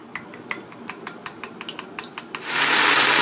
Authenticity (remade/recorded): recorded